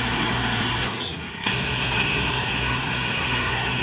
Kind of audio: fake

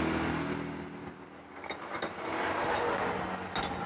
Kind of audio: real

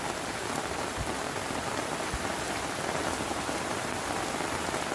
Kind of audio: fake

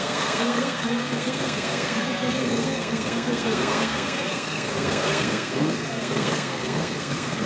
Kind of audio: fake